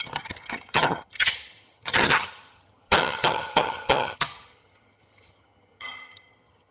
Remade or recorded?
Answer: remade